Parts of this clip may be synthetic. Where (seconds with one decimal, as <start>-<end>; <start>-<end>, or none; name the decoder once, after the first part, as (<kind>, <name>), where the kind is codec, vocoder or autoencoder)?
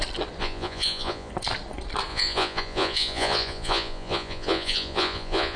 0.4-1.3 (vocoder, Vocos); 2.1-5.6